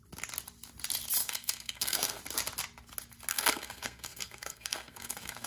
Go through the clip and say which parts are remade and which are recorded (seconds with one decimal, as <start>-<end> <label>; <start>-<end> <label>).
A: 0.0-1.2 recorded; 1.2-2.2 remade; 2.2-3.3 recorded; 3.3-5.5 remade